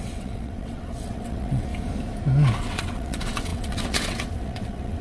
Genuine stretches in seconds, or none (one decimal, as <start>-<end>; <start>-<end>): 1.7-2.6